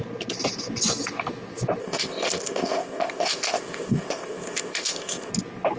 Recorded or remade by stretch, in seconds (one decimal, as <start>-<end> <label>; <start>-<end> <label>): 0.0-1.8 recorded; 1.8-5.3 remade; 5.3-5.8 recorded